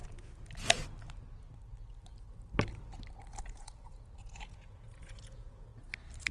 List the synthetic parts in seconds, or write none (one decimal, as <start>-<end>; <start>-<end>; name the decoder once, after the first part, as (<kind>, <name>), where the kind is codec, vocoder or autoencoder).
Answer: 3.4-5.7 (vocoder, Vocos)